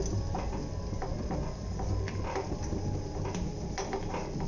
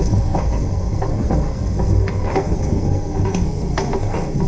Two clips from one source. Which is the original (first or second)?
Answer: first